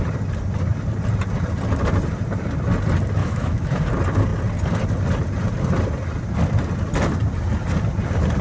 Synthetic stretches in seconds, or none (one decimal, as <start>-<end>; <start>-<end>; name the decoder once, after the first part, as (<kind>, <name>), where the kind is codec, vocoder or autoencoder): 3.2-3.8 (autoencoder, DAC-VAE)